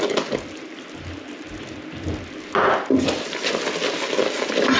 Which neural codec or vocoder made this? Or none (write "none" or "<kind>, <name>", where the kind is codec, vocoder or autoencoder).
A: none